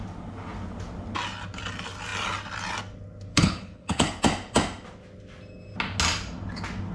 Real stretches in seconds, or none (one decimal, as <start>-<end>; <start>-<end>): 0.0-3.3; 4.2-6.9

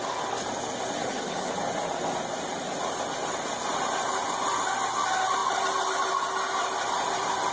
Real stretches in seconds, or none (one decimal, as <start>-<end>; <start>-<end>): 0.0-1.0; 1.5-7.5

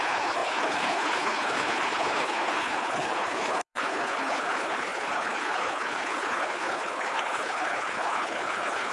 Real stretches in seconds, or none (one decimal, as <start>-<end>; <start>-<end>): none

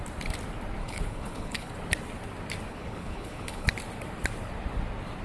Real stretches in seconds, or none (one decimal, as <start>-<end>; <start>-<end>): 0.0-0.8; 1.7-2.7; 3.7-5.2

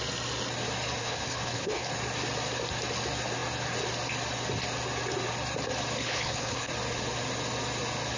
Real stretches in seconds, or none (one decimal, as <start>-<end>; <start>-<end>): 0.0-1.0; 1.9-6.0; 6.7-8.2

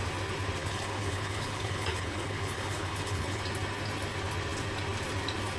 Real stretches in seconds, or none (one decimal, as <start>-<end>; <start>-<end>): 0.0-0.6; 3.4-5.6

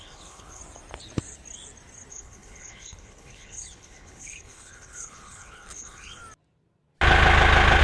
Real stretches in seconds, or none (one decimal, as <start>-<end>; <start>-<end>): 0.6-2.1; 6.2-7.8

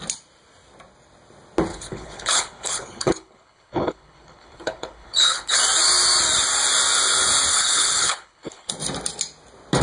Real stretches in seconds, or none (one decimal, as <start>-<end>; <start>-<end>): 0.0-1.7; 5.6-7.5; 8.7-9.8